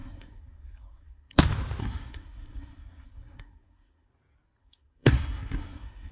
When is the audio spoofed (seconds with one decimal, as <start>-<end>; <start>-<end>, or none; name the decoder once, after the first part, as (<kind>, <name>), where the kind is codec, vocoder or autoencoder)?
0.0-1.4 (codec, SNAC); 1.8-4.1; 4.6-6.1